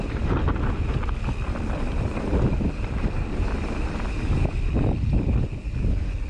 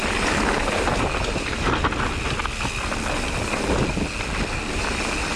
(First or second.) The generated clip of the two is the first